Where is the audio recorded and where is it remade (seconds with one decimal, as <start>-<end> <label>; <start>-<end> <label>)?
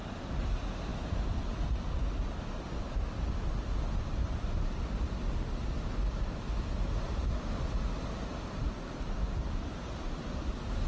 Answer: 0.0-10.9 recorded